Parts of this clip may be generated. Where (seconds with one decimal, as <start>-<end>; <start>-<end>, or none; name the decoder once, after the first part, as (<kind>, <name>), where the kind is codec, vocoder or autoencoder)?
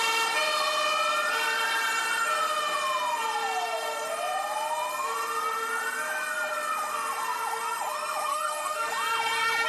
8.3-8.9 (codec, SNAC)